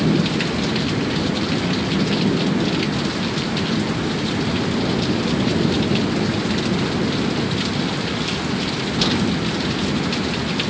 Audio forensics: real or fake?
real